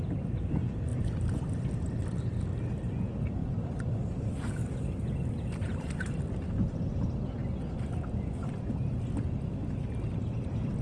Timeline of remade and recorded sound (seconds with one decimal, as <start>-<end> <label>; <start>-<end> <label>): 0.0-0.9 recorded; 0.9-1.4 remade; 1.4-3.4 recorded; 3.4-6.2 remade; 6.2-10.8 recorded